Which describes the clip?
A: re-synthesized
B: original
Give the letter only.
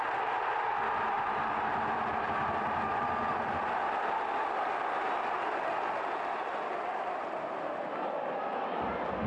B